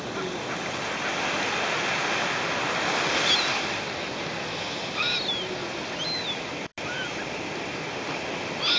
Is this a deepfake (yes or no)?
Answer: no